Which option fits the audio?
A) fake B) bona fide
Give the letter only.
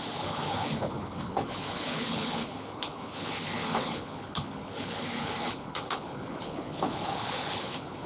A